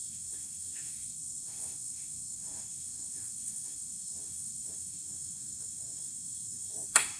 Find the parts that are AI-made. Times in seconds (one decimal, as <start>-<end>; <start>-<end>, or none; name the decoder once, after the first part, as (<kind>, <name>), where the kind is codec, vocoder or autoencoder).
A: 0.0-7.2 (autoencoder, DAC-VAE)

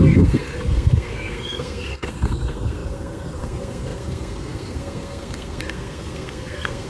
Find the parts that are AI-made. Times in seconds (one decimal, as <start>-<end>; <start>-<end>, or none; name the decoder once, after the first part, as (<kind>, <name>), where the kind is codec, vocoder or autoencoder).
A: 0.0-6.9 (codec, SNAC)

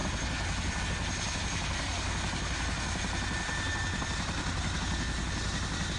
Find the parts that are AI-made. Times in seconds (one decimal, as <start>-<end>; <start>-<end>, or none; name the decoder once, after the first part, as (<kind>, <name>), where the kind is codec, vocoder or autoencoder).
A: none

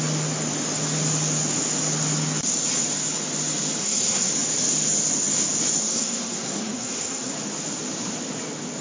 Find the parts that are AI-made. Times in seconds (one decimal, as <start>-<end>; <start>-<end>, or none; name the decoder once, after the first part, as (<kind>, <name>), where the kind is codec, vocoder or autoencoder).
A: 3.8-4.3 (codec, SNAC); 5.8-7.3